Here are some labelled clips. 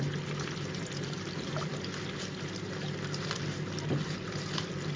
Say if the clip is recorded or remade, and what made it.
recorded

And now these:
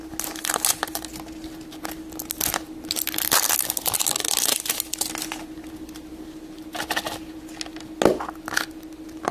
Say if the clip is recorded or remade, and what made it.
recorded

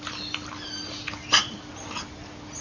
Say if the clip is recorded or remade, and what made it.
recorded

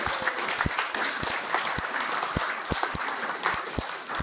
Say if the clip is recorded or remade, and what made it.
recorded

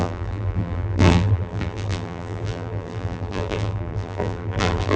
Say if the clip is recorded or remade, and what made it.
remade, vocoder, BigVGAN v2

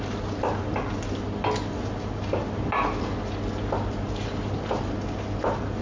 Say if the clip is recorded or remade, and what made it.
recorded